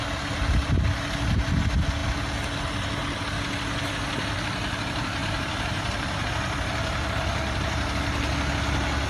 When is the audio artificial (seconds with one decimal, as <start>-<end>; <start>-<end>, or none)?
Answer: 5.2-6.2